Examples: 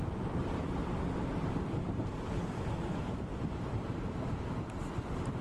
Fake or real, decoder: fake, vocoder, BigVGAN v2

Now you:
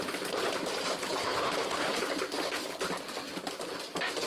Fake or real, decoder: real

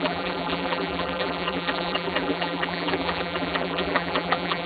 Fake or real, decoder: fake, vocoder, BigVGAN v2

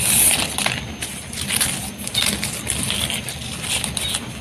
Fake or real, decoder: real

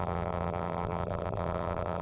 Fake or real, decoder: fake, vocoder, BigVGAN v2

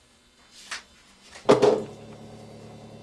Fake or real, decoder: real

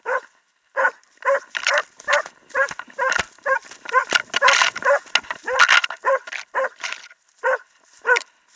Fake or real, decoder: real